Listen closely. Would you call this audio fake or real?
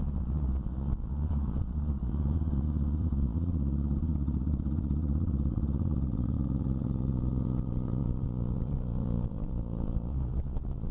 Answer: fake